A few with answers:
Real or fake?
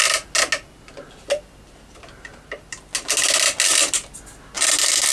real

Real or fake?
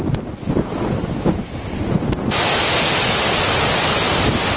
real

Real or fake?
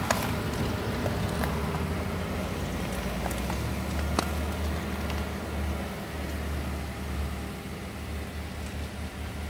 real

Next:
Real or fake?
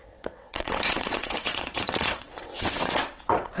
fake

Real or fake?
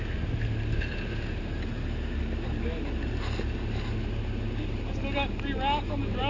real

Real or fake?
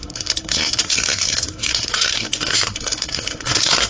fake